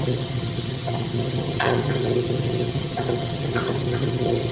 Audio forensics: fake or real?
fake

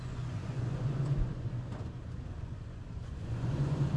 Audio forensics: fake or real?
fake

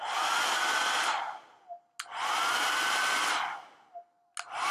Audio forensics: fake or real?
real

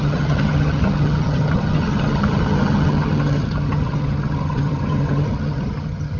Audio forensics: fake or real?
fake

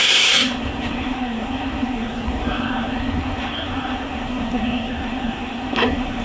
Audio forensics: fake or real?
fake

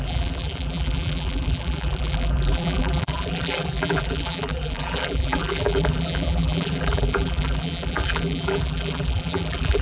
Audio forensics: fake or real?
fake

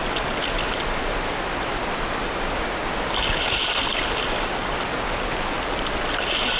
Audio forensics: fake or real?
real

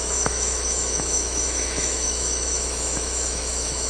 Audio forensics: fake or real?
fake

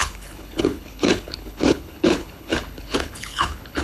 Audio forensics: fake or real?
fake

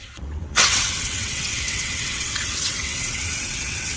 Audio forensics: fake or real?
fake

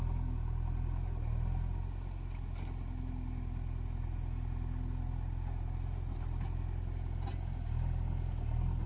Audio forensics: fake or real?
real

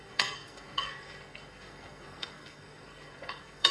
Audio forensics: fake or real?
fake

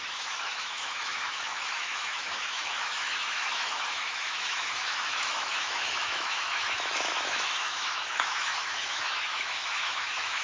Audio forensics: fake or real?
fake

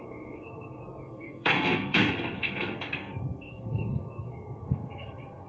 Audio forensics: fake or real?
fake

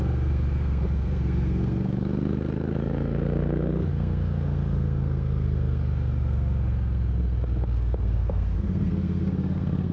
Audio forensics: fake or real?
fake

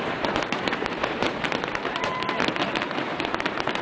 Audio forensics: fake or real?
fake